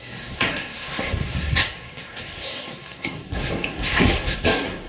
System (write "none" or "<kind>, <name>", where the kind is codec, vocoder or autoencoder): codec, SNAC